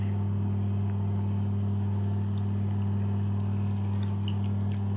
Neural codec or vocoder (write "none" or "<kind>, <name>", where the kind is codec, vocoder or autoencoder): none